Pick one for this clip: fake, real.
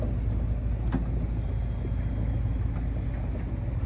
real